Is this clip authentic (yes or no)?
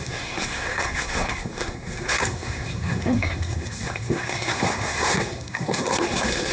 no